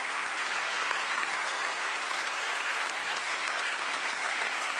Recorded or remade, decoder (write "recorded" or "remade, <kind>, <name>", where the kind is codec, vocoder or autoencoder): remade, codec, SNAC